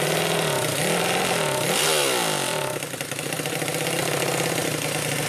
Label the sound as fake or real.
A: real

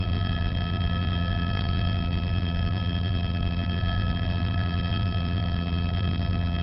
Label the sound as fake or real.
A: fake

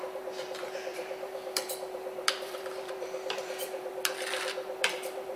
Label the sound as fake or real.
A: fake